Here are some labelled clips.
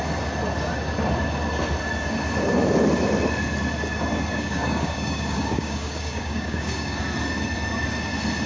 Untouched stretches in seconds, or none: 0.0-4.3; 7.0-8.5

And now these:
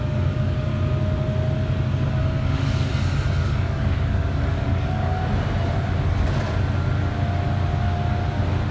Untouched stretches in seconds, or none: 0.7-2.2; 2.9-3.4; 5.2-8.7

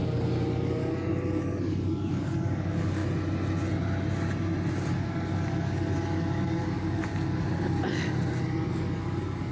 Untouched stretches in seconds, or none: 3.0-5.0; 7.1-8.7

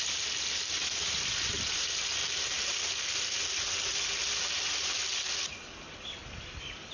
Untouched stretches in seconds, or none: 0.0-6.9

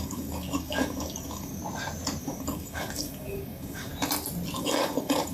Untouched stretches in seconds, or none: 1.6-2.2; 3.9-4.6

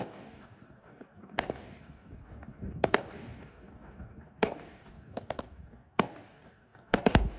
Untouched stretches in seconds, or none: none